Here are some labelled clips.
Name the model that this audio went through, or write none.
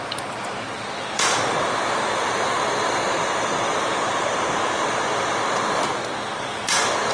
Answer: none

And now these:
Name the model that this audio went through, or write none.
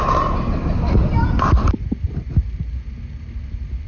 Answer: none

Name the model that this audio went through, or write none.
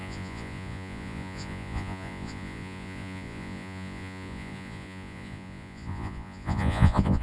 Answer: vocoder, Vocos